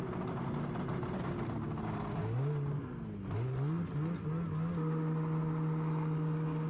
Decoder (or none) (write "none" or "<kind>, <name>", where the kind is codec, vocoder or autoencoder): none